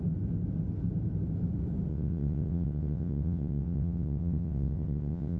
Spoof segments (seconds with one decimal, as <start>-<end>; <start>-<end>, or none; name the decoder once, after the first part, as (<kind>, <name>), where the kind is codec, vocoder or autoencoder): 1.9-5.4 (vocoder, WaveNeXt)